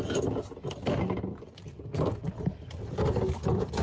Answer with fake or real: real